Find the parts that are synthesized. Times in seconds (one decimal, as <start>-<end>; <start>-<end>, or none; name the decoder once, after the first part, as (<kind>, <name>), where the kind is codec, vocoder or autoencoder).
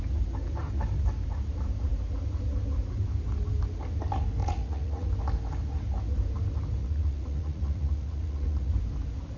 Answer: 4.4-5.1 (vocoder, Vocos); 6.8-8.7